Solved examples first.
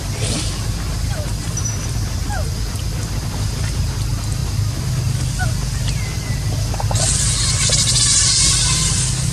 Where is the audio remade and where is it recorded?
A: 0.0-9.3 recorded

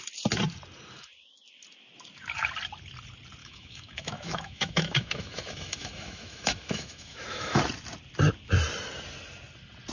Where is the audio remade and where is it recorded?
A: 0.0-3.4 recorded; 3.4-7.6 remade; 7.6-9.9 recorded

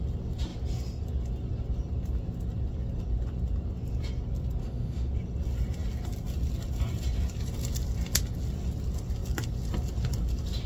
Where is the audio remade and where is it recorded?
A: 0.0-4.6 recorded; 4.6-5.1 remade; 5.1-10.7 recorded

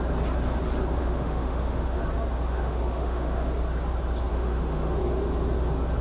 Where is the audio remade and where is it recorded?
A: 0.0-1.0 recorded; 1.0-2.0 remade; 2.0-2.5 recorded; 2.5-3.5 remade; 3.5-4.3 recorded; 4.3-5.0 remade; 5.0-6.0 recorded